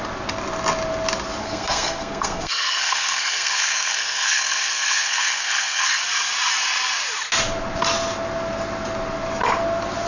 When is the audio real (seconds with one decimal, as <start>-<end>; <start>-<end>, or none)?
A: 0.0-1.4; 6.0-10.1